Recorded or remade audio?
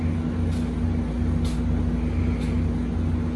recorded